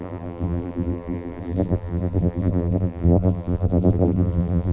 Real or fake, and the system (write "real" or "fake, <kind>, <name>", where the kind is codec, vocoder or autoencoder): fake, vocoder, BigVGAN v2